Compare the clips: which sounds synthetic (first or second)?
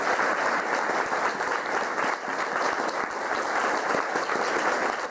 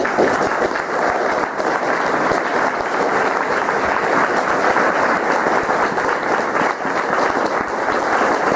second